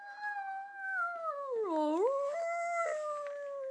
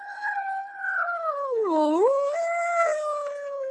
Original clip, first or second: first